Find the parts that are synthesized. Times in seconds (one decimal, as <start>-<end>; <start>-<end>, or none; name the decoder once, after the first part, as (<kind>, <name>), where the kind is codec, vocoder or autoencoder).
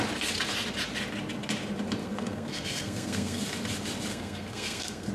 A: 2.0-3.4 (codec, SNAC); 4.1-5.1